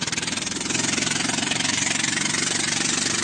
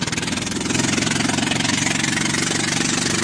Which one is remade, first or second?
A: first